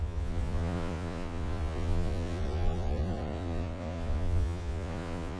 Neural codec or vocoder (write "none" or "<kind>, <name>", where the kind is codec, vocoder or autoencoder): vocoder, Vocos